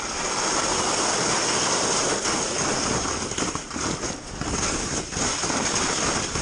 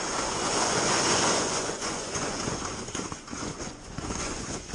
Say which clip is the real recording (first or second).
first